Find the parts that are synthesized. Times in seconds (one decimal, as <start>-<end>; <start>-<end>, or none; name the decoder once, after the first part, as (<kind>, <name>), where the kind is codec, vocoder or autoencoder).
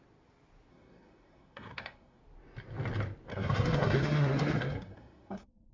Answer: 0.7-2.2 (codec, SNAC); 3.3-5.7